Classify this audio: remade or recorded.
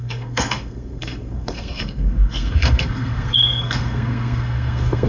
remade